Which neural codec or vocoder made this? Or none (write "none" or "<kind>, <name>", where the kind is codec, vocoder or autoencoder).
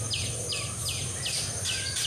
none